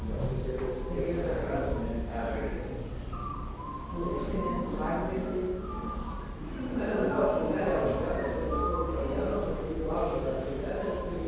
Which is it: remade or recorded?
recorded